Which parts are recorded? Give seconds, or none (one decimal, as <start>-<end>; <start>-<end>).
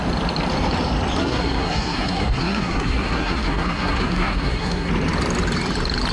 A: 0.0-1.2; 4.9-6.1